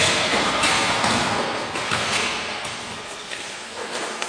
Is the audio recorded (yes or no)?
no